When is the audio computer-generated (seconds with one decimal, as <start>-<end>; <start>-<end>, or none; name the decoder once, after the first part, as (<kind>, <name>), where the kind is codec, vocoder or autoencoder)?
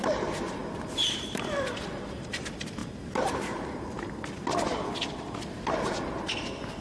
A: none